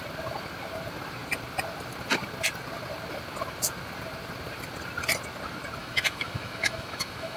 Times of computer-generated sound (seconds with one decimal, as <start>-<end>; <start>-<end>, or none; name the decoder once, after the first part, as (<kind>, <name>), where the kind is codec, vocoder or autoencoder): 5.8-7.4 (autoencoder, DAC-VAE)